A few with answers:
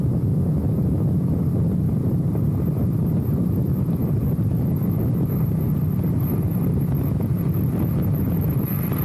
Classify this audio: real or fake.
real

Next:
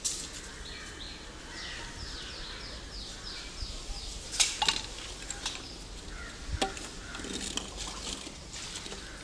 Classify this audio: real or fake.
real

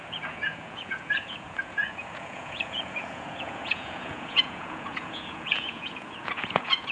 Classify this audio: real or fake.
fake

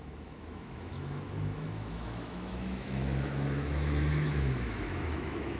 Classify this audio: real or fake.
fake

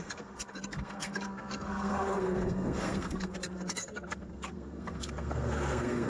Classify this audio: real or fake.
fake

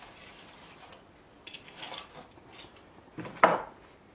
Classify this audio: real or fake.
real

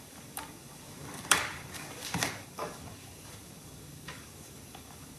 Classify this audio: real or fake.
fake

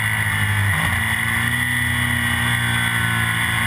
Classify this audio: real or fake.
real